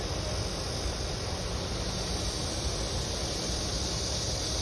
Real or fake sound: real